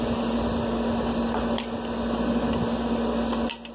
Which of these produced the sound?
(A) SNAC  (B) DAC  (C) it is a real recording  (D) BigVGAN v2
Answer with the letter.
C